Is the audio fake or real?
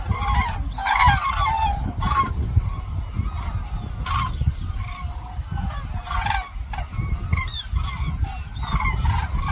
real